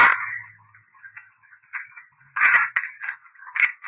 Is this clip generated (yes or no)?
no